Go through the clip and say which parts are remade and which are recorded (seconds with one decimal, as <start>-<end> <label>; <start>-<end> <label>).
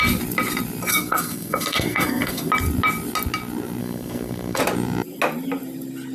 0.0-0.9 recorded; 0.9-2.5 remade; 2.5-3.8 recorded; 3.8-4.6 remade; 4.6-6.1 recorded